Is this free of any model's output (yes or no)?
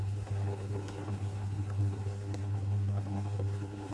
no